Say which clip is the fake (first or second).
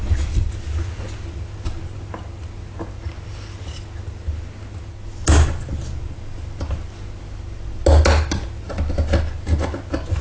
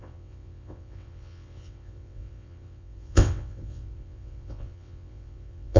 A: second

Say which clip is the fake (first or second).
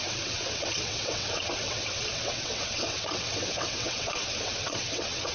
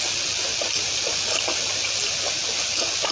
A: first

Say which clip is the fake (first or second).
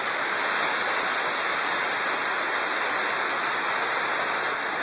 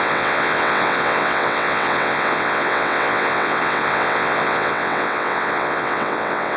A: second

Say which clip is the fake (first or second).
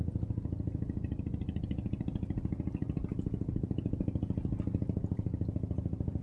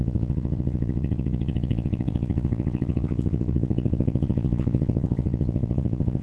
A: second